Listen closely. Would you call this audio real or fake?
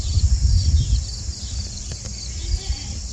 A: real